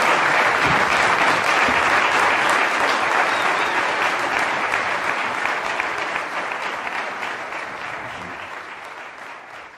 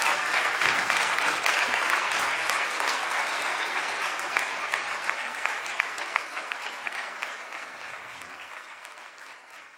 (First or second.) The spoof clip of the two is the second